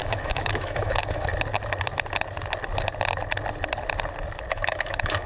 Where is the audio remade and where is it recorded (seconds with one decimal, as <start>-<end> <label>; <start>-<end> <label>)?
0.0-1.3 remade; 1.3-4.5 recorded; 4.5-5.3 remade